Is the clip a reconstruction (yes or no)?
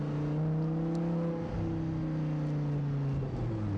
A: no